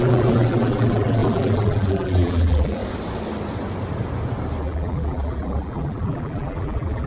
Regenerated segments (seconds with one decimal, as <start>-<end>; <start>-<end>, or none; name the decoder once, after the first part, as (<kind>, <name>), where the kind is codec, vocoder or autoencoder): 0.0-2.8 (vocoder, BigVGAN v2); 4.6-7.1